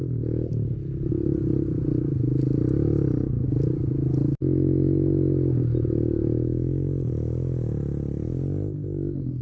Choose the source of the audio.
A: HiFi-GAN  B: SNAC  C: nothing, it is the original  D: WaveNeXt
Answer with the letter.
C